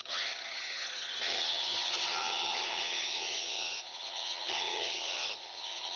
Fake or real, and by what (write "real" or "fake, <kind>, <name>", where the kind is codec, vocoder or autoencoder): fake, vocoder, HiFi-GAN